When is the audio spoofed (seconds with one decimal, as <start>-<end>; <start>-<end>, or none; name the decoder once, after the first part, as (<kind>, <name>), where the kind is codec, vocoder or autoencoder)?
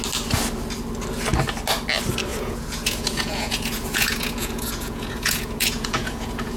2.3-6.6 (vocoder, Vocos)